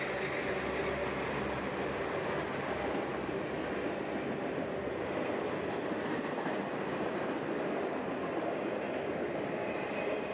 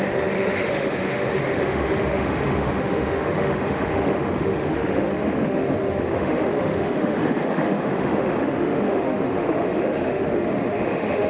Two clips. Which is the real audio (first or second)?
first